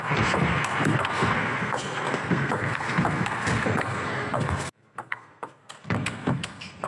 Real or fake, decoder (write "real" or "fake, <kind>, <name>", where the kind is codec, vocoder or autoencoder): fake, codec, SNAC